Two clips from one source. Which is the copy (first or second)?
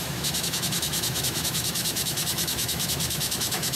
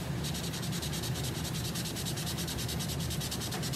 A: first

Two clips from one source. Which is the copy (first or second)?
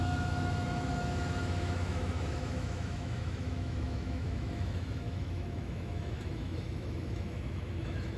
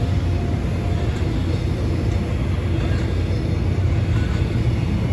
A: first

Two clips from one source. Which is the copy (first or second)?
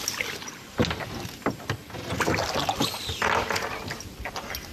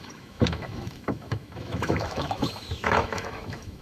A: second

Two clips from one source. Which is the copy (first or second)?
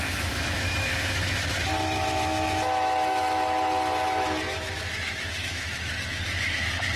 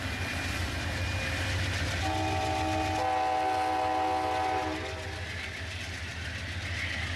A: first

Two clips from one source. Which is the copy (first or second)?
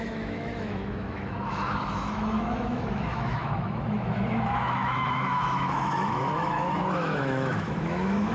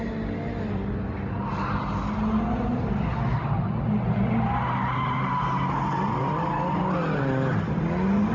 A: first